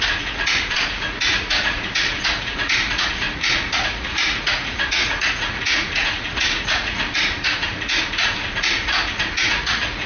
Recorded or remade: remade